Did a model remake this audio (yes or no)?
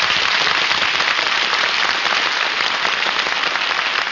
no